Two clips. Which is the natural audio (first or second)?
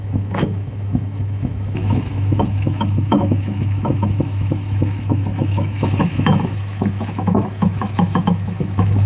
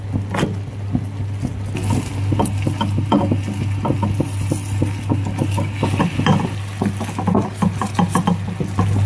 second